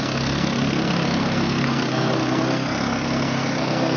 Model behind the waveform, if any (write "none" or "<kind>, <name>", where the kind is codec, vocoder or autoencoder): codec, SNAC